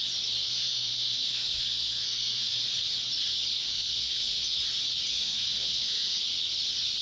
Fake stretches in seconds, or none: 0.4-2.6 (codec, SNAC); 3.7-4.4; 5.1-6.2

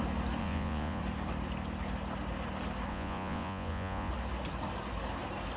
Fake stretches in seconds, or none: 0.4-1.0 (vocoder, Vocos); 2.9-4.1

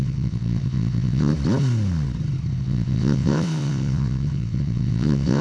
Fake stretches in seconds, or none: 0.0-1.3 (vocoder, WaveNeXt); 2.6-5.4

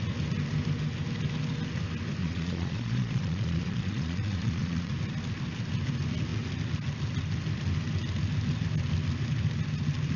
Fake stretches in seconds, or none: 2.2-4.9 (vocoder, Vocos)

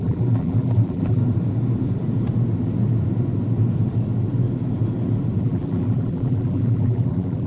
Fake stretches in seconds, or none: 0.0-1.2 (vocoder, BigVGAN v2); 5.4-7.5

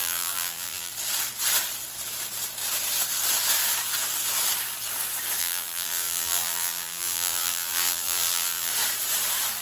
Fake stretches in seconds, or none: 0.0-0.9 (vocoder, BigVGAN v2); 5.4-8.7

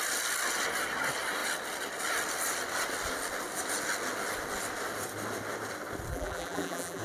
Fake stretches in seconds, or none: 6.1-7.0 (vocoder, BigVGAN v2)

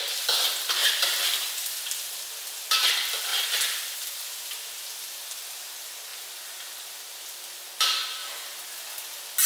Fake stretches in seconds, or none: 0.8-2.2 (vocoder, BigVGAN v2)